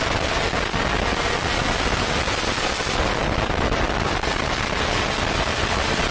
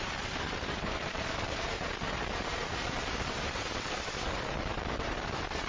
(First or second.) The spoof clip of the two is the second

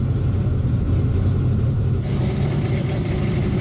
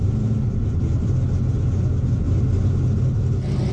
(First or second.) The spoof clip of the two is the first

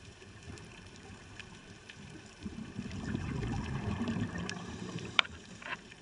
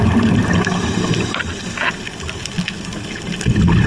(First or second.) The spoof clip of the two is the first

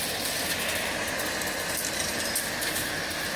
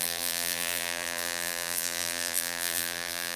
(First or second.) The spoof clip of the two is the second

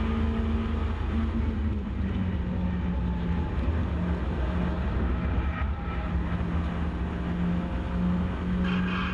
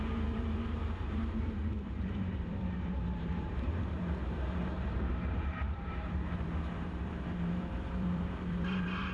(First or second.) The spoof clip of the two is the second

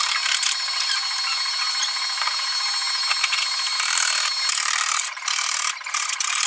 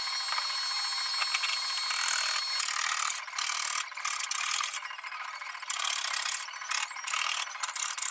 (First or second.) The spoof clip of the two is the first